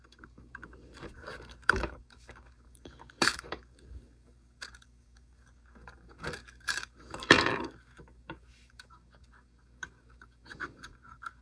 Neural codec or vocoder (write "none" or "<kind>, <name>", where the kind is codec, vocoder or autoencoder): codec, DAC